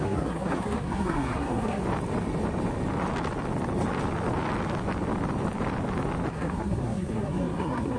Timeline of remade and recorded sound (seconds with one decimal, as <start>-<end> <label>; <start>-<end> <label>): 0.0-1.8 remade; 1.8-6.3 recorded; 6.3-8.0 remade